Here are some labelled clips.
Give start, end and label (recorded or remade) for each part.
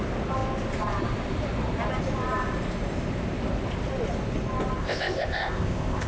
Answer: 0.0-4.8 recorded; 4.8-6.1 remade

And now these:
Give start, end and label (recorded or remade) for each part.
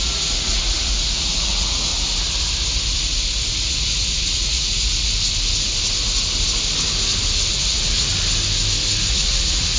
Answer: 0.0-1.9 remade; 1.9-3.5 recorded; 3.5-5.1 remade; 5.1-7.5 recorded; 7.5-8.1 remade; 8.1-9.1 recorded; 9.1-9.8 remade